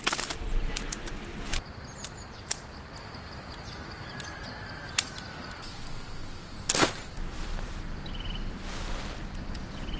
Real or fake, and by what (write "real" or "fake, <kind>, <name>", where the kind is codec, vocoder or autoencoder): real